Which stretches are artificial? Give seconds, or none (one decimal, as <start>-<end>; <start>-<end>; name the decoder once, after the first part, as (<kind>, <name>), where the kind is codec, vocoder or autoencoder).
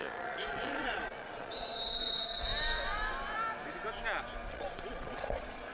0.0-2.5 (vocoder, Vocos); 4.5-5.7